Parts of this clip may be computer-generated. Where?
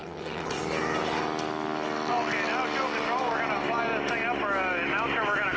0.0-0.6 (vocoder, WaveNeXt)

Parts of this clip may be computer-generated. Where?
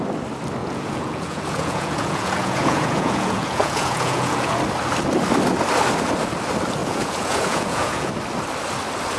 0.6-4.6 (vocoder, Vocos); 6.8-8.1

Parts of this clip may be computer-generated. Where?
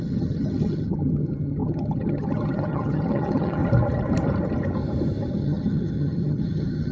0.0-3.6 (vocoder, HiFi-GAN); 5.3-6.9